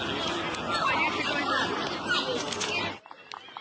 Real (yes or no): yes